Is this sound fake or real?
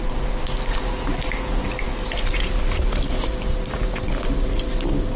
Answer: real